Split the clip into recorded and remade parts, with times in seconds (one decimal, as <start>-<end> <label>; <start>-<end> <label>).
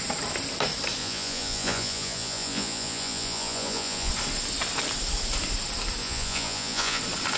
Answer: 0.0-1.0 recorded; 1.0-4.1 remade; 4.1-6.0 recorded; 6.0-7.0 remade; 7.0-7.4 recorded